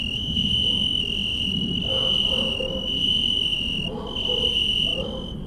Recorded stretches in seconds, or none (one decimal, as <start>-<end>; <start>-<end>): 0.0-1.3; 2.6-4.9

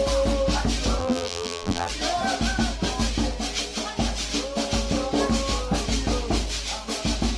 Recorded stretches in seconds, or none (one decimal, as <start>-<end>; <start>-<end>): 0.0-1.0; 1.9-7.4

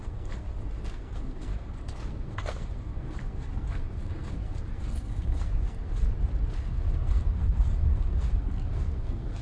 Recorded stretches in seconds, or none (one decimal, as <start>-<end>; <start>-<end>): 5.9-6.5

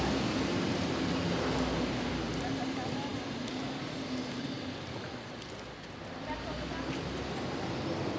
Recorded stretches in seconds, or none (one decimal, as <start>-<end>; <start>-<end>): 0.0-8.2

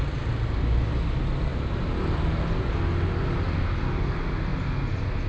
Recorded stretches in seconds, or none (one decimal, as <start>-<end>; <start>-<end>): 0.0-5.3

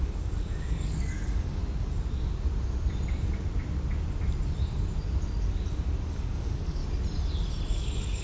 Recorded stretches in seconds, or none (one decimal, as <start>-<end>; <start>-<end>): 1.6-6.1; 6.8-7.7

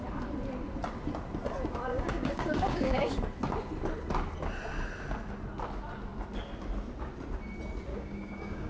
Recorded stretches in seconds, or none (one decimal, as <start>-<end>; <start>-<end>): 0.0-1.9; 3.1-7.9

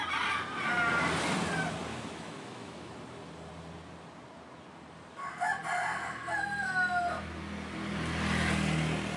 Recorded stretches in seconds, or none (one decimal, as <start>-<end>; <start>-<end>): 0.0-1.9; 2.9-9.2